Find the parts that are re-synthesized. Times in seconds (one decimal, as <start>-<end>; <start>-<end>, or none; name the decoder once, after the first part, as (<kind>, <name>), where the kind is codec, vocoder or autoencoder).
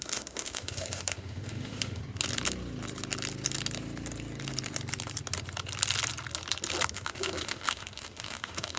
0.0-2.0 (autoencoder, DAC-VAE); 6.9-8.8